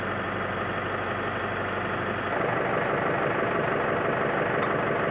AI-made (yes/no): no